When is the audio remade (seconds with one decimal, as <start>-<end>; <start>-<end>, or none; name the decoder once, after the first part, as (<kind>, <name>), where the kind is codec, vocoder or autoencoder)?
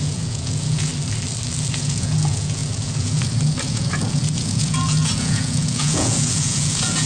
0.0-0.9 (vocoder, Vocos); 1.7-7.1